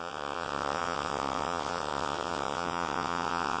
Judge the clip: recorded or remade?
remade